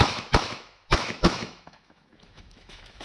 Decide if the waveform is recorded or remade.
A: remade